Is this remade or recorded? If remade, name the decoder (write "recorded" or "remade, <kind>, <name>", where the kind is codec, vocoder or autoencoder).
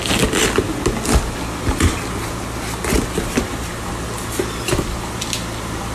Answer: recorded